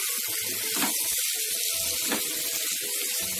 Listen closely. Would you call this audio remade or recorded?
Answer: recorded